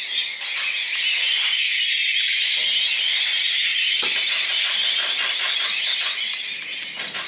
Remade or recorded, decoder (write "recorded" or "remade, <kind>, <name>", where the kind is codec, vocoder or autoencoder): recorded